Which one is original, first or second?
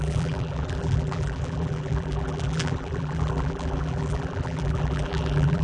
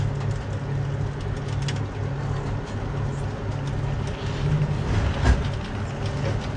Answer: second